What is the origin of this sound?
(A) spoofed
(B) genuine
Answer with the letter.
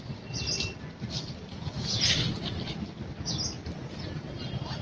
B